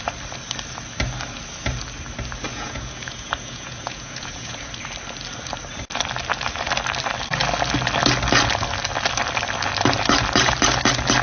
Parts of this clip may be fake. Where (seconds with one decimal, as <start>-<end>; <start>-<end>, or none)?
2.5-4.7